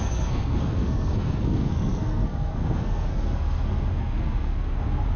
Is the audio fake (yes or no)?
yes